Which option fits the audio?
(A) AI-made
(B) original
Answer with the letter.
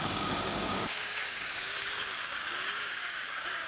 A